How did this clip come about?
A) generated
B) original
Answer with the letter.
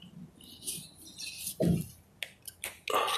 B